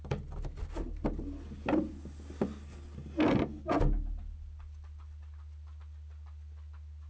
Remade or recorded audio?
recorded